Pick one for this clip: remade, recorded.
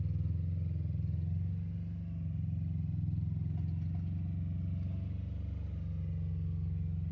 recorded